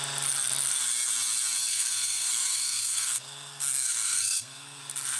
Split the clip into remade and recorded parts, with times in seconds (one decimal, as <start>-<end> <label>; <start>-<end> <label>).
0.0-1.7 recorded; 1.7-4.8 remade; 4.8-5.2 recorded